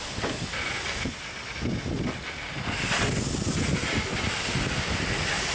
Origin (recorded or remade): recorded